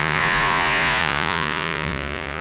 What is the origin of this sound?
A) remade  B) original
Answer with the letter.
A